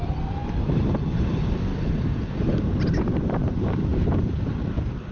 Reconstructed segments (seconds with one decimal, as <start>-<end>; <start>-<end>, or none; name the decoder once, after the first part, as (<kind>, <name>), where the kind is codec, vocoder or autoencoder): 0.0-1.7 (vocoder, BigVGAN v2); 2.3-5.1